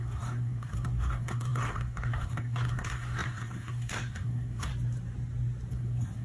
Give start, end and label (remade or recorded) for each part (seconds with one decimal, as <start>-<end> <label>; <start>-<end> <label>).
0.0-4.7 remade; 4.7-5.7 recorded; 5.7-6.2 remade